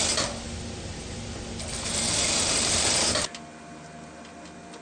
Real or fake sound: real